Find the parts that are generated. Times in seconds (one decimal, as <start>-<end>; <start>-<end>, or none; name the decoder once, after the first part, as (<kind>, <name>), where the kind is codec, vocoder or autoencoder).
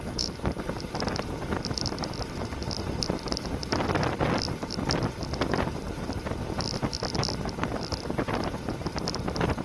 none